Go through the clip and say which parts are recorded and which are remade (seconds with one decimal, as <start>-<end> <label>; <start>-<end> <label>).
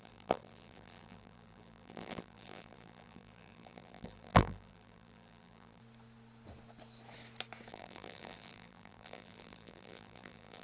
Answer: 0.0-5.8 remade; 5.8-7.7 recorded; 7.7-10.6 remade